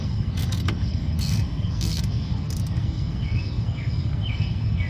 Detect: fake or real fake